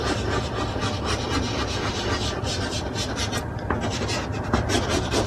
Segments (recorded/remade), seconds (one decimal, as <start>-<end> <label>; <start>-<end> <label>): 0.0-5.3 recorded